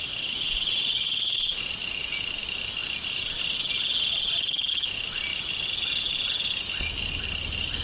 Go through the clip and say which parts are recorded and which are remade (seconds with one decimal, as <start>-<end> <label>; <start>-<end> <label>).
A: 0.0-1.7 remade; 1.7-7.8 recorded